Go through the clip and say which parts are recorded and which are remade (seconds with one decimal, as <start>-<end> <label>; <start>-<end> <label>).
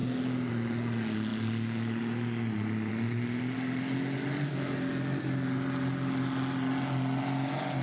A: 0.0-7.8 recorded